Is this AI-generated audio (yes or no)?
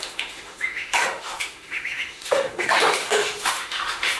yes